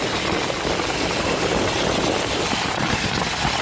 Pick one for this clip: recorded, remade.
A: recorded